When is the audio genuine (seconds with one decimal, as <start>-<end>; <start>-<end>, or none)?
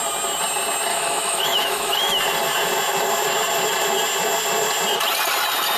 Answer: 0.0-0.9; 2.2-5.8